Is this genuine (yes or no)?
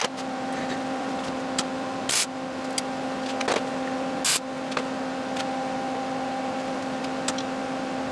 yes